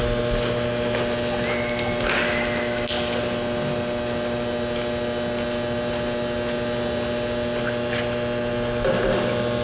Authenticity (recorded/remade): recorded